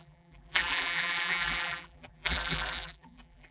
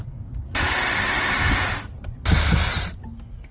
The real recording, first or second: second